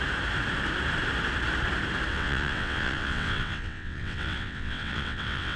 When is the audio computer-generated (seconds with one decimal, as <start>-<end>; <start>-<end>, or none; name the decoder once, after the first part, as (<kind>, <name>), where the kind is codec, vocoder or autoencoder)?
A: 2.1-5.6 (vocoder, WaveNeXt)